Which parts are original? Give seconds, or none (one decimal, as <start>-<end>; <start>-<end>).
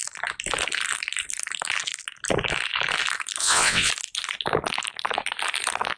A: 0.0-3.4; 3.9-6.0